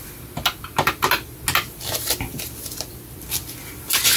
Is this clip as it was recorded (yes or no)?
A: yes